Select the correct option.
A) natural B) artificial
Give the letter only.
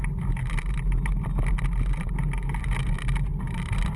A